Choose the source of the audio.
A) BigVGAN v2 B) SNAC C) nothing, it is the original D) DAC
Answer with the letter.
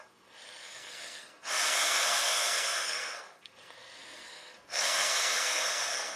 B